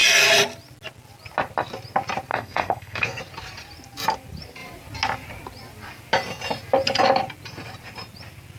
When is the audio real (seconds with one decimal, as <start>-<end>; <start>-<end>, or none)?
0.0-2.3; 3.2-8.6